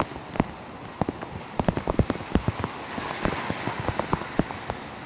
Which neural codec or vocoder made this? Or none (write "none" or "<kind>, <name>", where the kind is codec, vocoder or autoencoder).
none